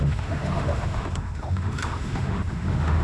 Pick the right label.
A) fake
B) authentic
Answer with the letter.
A